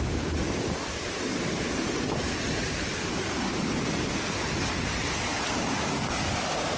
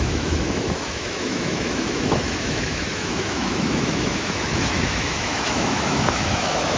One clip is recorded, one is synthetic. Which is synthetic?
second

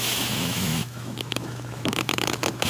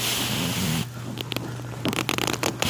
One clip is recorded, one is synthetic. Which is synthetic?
first